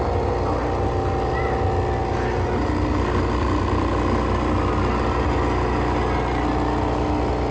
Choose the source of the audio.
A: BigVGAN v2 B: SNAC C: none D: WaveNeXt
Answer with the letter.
C